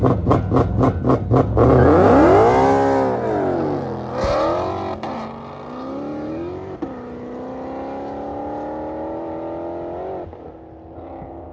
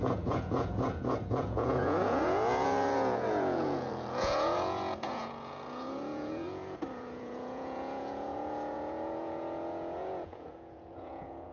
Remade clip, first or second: second